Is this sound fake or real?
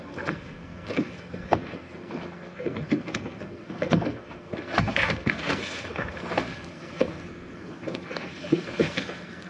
fake